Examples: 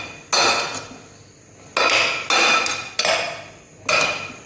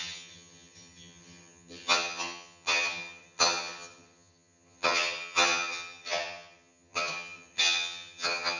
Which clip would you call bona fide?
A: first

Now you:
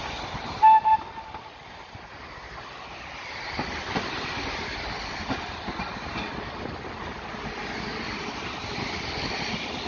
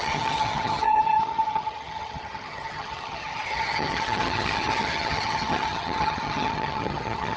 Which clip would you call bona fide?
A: first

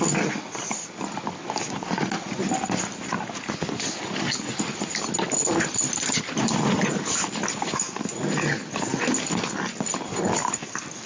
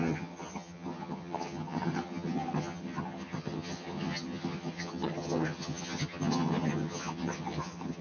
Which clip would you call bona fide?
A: first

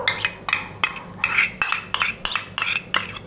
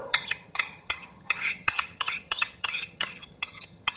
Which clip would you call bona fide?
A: first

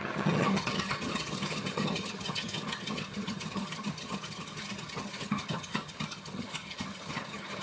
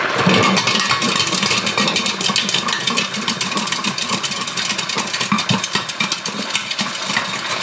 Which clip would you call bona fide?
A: second